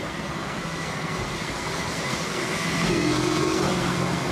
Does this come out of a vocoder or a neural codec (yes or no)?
yes